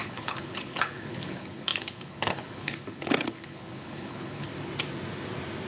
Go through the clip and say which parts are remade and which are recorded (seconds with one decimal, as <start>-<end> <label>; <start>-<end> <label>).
0.0-4.5 remade; 4.5-5.7 recorded